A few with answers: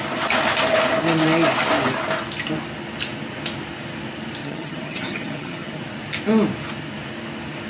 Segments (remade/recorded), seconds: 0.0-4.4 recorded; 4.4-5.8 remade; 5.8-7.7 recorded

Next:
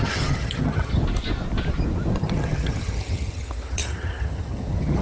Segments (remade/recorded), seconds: 0.0-1.0 remade; 1.0-2.2 recorded; 2.2-5.0 remade

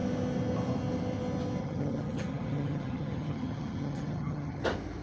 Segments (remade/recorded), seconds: 0.0-1.6 recorded; 1.6-4.6 remade; 4.6-5.0 recorded

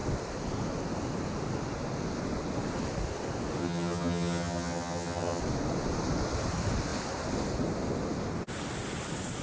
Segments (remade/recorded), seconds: 0.0-3.6 recorded; 3.6-5.4 remade; 5.4-9.4 recorded